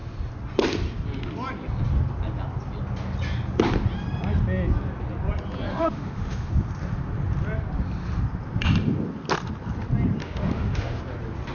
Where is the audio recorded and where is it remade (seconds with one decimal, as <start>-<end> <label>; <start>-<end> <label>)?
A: 0.0-5.7 recorded; 5.7-6.5 remade; 6.5-10.2 recorded; 10.2-11.0 remade; 11.0-11.5 recorded